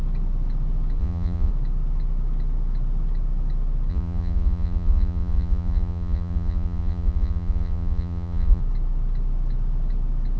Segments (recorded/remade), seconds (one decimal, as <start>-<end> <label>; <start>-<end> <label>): 0.0-1.0 recorded; 1.0-1.5 remade; 1.5-3.9 recorded; 3.9-8.6 remade; 8.6-10.4 recorded